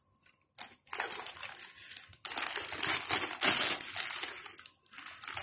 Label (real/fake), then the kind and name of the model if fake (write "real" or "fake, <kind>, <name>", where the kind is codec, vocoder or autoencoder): real